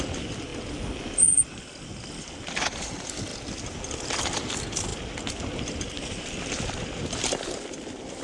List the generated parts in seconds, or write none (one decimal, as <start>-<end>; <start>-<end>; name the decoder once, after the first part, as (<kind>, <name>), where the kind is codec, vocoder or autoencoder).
none